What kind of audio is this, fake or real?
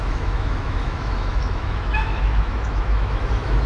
fake